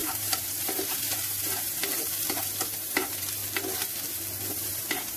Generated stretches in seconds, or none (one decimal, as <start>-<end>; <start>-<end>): 0.0-1.8; 2.4-3.4; 4.5-5.2